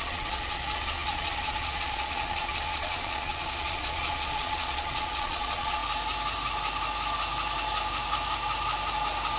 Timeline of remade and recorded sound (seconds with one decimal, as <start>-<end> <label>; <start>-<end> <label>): 0.0-5.8 remade; 5.8-9.4 recorded